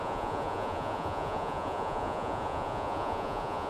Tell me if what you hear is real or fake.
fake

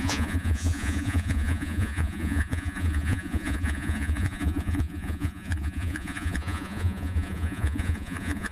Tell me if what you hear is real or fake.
fake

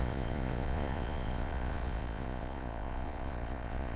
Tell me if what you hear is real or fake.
fake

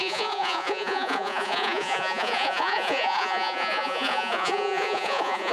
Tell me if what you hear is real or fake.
fake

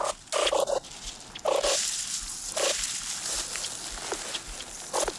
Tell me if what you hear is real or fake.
real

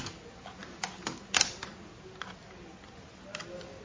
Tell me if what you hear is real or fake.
real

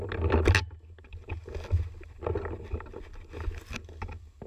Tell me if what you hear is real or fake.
real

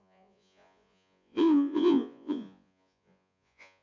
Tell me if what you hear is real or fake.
fake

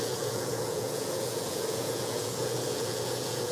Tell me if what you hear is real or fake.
fake